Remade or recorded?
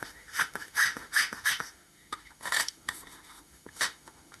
remade